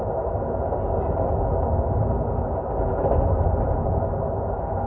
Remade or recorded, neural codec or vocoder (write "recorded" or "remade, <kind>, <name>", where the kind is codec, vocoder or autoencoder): recorded